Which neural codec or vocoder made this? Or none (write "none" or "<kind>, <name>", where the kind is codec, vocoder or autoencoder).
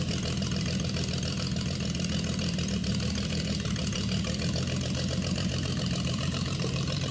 vocoder, BigVGAN v2